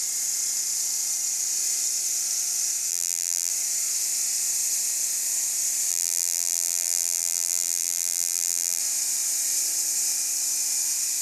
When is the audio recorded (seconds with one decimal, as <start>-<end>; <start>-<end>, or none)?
0.0-2.9; 3.5-5.9; 8.8-11.2